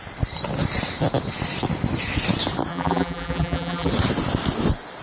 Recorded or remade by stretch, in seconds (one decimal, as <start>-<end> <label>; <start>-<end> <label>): 0.0-2.7 recorded; 2.7-3.9 remade; 3.9-5.0 recorded

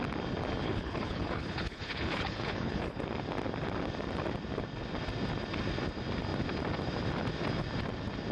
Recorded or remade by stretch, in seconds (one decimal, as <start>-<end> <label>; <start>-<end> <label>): 0.0-0.6 recorded; 0.6-3.0 remade; 3.0-8.3 recorded

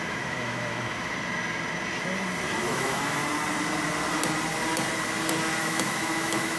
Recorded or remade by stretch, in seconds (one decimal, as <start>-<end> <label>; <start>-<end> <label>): 0.0-1.1 remade; 1.1-2.6 recorded; 2.6-3.2 remade; 3.2-5.6 recorded; 5.6-6.6 remade